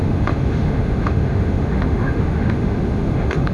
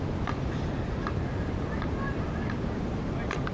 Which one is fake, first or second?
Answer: first